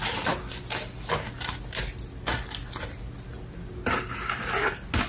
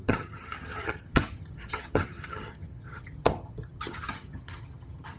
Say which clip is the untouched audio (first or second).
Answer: first